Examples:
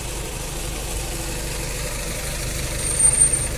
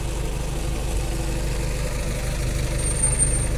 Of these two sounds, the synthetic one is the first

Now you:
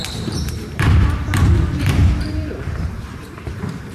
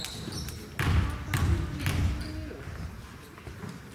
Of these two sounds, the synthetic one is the first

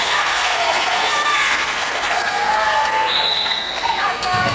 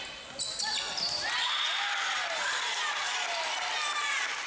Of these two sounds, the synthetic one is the first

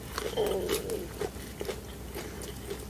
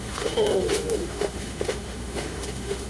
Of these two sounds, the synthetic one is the second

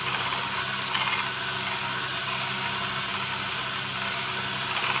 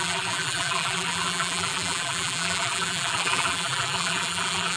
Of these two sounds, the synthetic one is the second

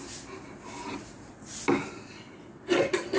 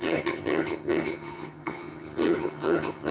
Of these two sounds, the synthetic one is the second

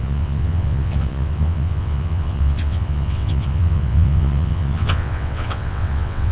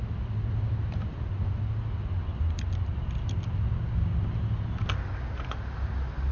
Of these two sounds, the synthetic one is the first